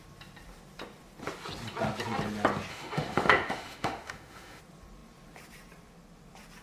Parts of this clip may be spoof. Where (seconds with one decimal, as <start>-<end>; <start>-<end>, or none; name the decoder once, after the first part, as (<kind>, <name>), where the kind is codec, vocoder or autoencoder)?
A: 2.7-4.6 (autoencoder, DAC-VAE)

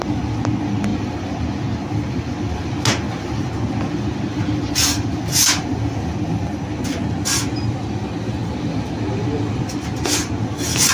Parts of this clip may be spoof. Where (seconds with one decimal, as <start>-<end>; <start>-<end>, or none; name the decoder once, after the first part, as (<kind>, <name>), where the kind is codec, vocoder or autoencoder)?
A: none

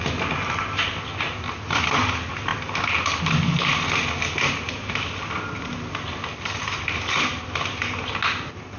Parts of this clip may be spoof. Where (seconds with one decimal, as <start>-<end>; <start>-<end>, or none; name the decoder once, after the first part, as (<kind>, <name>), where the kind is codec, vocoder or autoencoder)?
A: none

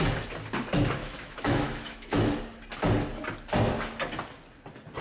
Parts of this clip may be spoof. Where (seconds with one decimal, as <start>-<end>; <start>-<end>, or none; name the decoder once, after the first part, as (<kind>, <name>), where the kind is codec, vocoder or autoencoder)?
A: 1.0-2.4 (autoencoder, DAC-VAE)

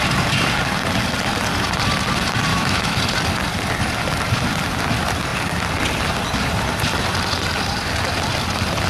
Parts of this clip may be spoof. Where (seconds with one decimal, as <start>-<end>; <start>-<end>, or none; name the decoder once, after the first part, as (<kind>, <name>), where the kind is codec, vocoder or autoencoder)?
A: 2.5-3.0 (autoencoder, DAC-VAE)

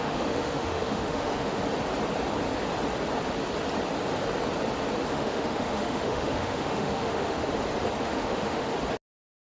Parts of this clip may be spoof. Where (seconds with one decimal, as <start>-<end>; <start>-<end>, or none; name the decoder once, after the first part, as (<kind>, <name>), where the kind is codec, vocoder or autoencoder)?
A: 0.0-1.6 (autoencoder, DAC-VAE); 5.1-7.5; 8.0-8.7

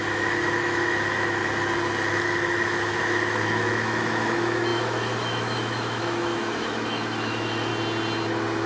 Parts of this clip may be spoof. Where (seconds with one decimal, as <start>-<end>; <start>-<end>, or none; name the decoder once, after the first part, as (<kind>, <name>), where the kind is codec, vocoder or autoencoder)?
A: 0.0-1.4 (autoencoder, DAC-VAE); 2.1-7.7

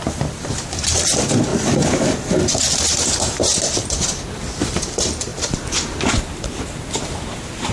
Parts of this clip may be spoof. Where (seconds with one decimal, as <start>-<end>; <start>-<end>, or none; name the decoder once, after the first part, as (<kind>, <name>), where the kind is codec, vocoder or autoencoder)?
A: none